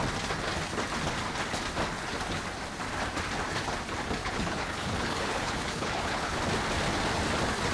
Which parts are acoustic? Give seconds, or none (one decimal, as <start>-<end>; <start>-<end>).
0.0-4.2; 6.4-7.7